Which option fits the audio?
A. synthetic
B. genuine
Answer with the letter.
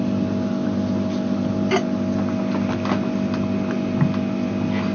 B